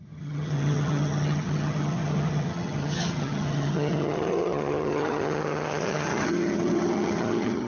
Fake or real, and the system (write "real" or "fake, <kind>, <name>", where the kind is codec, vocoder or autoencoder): fake, vocoder, HiFi-GAN